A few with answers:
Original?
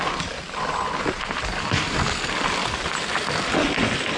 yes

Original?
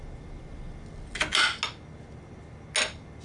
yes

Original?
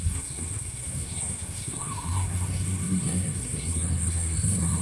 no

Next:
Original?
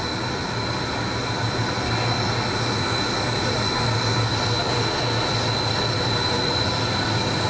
yes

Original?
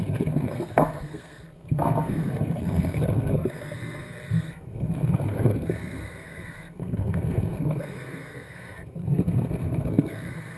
no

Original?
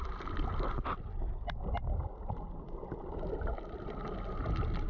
yes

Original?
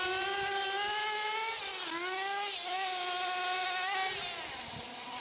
yes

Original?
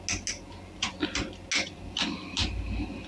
yes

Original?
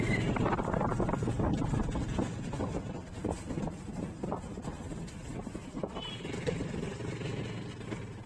yes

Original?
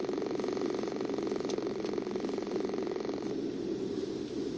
yes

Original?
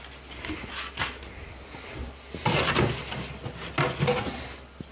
yes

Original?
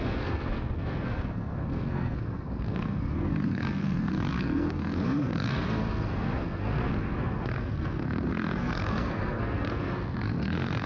no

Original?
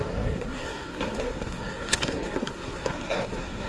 no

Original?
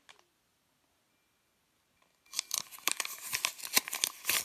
yes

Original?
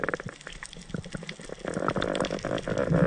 yes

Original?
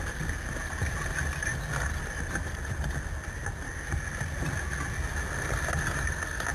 yes